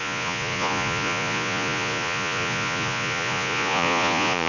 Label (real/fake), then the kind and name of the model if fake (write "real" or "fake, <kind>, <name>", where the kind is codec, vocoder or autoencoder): fake, vocoder, Vocos